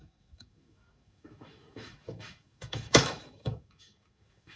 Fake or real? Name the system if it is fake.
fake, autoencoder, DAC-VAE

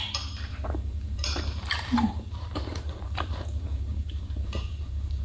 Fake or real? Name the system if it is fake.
fake, vocoder, BigVGAN v2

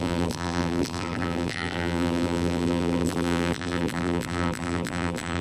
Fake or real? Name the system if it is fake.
fake, vocoder, BigVGAN v2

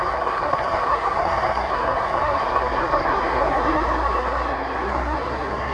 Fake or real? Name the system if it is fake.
fake, codec, SNAC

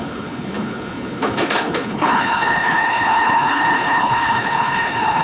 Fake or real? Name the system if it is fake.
fake, codec, HILCodec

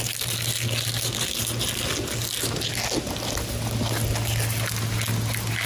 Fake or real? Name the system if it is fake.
real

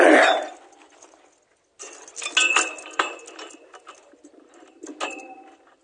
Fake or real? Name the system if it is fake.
real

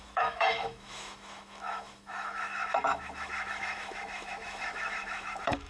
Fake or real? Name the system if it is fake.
fake, autoencoder, DAC-VAE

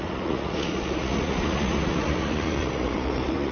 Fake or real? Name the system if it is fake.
fake, vocoder, Vocos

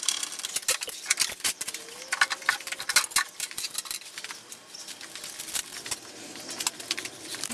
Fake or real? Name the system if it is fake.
real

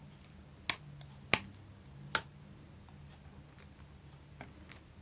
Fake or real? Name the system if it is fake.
real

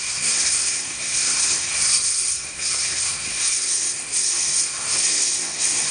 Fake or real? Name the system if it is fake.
fake, codec, SNAC